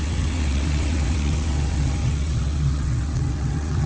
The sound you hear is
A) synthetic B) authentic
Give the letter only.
A